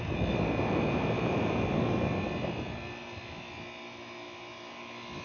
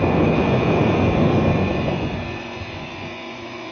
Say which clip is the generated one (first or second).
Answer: second